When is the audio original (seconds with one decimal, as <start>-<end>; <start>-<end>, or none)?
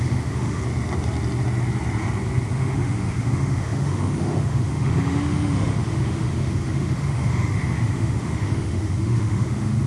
0.6-2.5